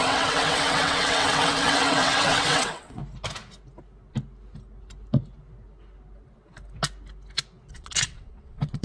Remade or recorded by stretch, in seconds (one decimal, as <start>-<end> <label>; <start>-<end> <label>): 0.0-3.0 remade; 3.0-7.7 recorded; 7.7-8.8 remade